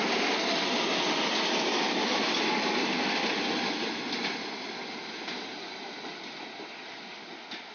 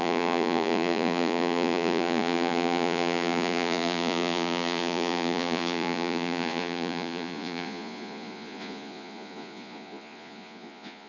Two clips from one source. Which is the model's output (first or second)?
second